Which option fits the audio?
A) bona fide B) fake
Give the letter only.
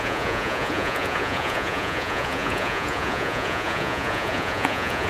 B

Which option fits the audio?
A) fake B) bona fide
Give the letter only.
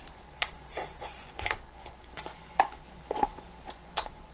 A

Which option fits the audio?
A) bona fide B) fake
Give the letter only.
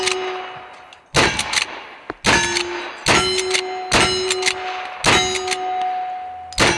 A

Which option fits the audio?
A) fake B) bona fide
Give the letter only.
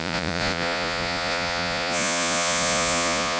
A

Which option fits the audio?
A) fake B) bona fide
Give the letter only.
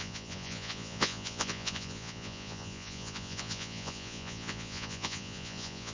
A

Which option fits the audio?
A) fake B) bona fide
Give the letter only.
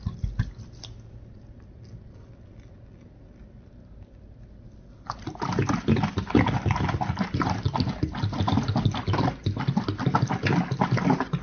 B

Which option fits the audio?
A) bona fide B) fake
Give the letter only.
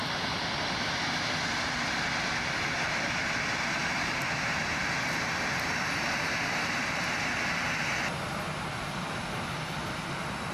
A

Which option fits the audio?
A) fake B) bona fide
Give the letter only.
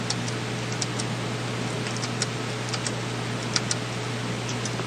B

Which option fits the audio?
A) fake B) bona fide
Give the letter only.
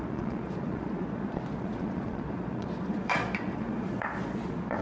A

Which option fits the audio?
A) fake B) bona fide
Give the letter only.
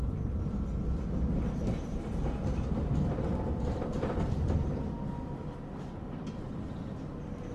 B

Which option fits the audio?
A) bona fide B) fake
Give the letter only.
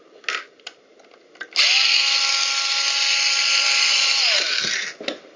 A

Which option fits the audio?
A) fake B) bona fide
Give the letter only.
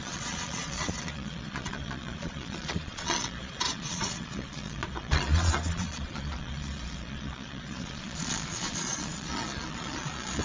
A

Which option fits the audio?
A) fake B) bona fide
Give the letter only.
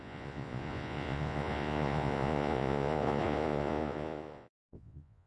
A